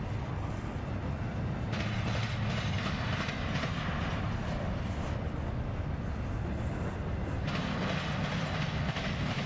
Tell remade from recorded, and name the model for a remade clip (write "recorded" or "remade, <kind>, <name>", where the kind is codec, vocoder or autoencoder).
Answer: recorded